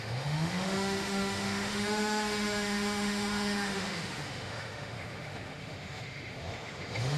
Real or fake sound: fake